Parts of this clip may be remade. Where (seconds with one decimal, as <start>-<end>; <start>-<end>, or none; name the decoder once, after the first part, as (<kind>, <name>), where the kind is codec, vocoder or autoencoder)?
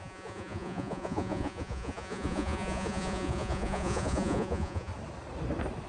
0.0-4.9 (vocoder, Vocos)